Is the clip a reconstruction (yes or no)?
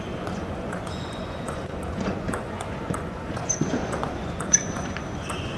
yes